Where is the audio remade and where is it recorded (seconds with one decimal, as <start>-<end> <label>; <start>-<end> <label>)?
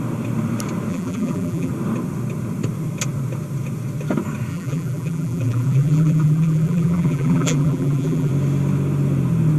0.0-0.9 recorded; 0.9-1.7 remade; 1.7-4.5 recorded; 4.5-8.3 remade; 8.3-9.6 recorded